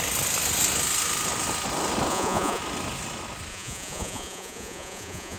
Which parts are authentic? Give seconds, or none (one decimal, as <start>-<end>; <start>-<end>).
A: 0.0-2.1; 2.6-3.5